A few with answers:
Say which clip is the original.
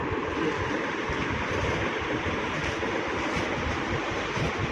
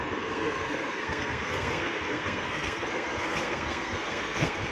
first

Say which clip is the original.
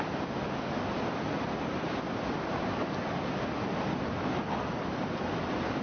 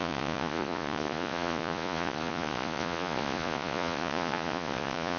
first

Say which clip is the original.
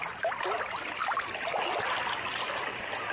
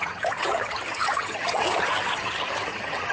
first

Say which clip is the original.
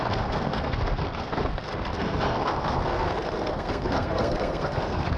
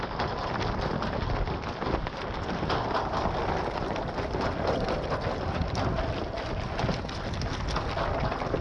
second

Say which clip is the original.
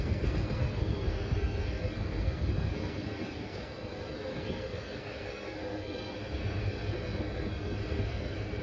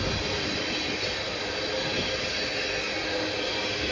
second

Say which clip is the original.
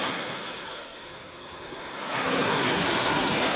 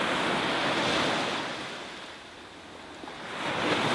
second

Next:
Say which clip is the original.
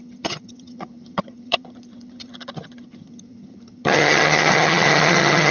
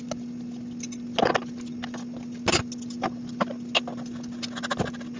second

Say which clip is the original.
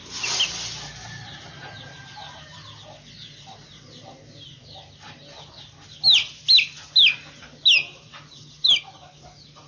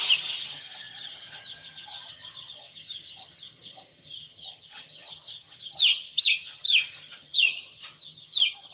first